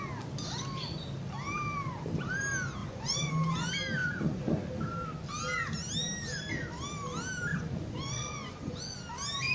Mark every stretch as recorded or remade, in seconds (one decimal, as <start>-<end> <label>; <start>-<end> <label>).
0.0-2.8 recorded; 2.8-3.3 remade; 3.3-4.0 recorded; 4.0-4.6 remade; 4.6-7.5 recorded; 7.5-8.8 remade; 8.8-9.5 recorded